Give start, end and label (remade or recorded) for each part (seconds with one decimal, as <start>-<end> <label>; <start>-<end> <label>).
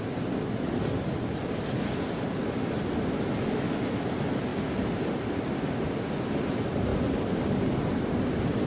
0.0-8.7 recorded